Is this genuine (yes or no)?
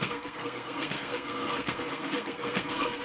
no